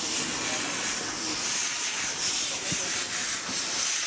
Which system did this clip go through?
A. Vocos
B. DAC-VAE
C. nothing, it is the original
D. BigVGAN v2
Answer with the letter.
C